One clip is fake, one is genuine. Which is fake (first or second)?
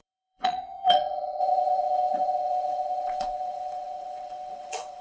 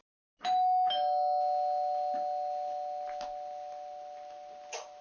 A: first